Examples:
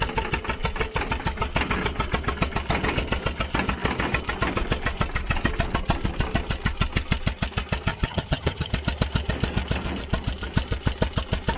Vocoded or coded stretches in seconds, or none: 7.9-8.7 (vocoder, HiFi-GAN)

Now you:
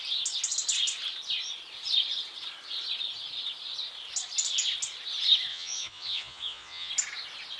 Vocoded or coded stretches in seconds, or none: 5.5-6.9 (vocoder, Vocos)